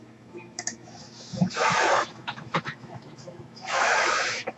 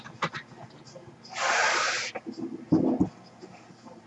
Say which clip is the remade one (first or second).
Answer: first